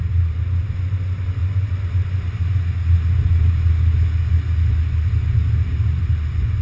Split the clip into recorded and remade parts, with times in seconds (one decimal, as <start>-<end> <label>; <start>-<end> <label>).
0.0-6.6 recorded